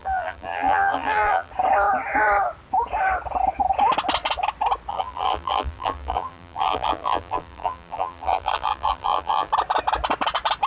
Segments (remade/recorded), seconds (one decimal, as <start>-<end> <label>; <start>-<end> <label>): 0.0-1.5 remade; 1.5-4.9 recorded; 4.9-9.5 remade; 9.5-10.7 recorded